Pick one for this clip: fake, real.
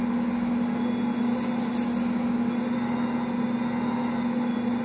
real